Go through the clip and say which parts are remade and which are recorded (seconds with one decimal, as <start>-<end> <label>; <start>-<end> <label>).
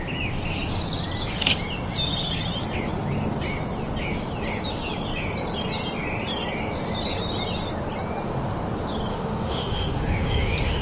0.0-9.1 recorded; 9.1-10.8 remade